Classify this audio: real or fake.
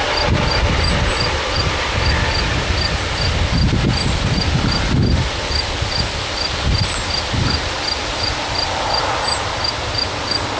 real